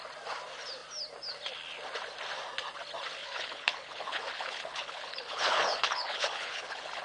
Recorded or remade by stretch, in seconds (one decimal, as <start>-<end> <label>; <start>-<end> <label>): 0.0-3.2 recorded; 3.2-7.0 remade